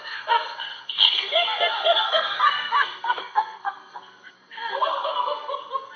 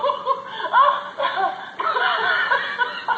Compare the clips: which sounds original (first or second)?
second